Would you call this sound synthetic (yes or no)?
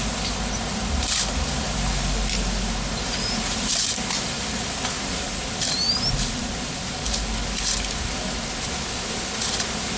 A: yes